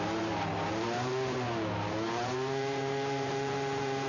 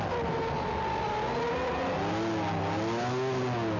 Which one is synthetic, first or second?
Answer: first